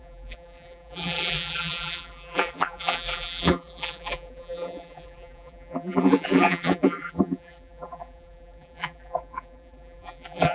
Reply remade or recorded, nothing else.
remade